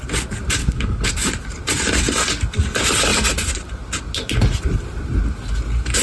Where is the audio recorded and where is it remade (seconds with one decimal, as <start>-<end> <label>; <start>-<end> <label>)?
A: 0.0-0.6 recorded; 0.6-1.1 remade; 1.1-6.0 recorded